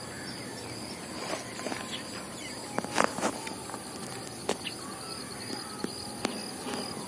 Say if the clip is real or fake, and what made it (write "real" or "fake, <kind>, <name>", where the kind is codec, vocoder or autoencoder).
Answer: real